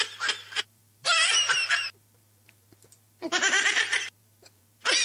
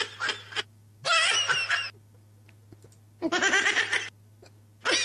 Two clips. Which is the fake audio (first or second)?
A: first